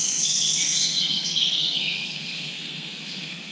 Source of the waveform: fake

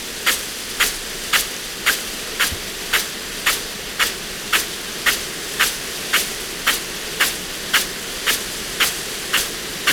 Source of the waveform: real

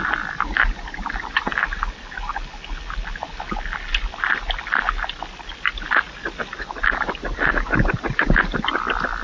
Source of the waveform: real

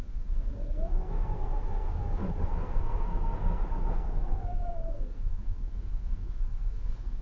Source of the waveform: fake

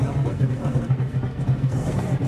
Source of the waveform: fake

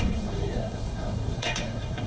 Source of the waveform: fake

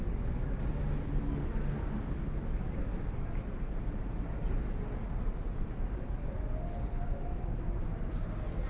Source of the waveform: real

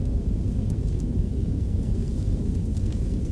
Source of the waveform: fake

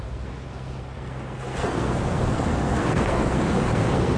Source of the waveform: fake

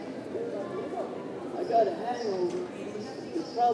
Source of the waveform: real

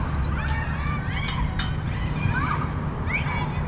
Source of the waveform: real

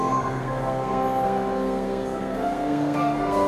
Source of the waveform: fake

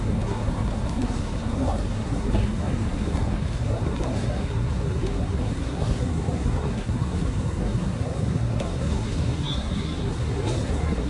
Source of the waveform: fake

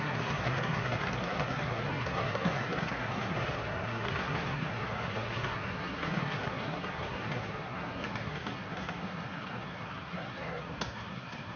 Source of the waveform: fake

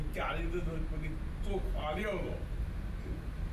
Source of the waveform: real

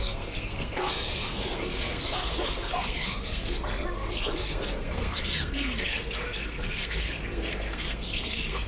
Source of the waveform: fake